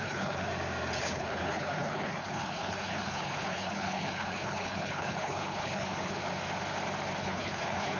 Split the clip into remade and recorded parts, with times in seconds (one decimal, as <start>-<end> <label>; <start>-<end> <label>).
0.0-0.5 remade; 0.5-1.0 recorded; 1.0-6.2 remade; 6.2-7.2 recorded; 7.2-8.0 remade